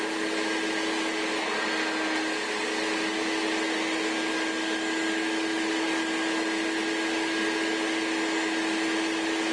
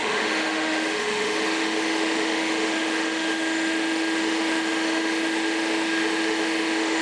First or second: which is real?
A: first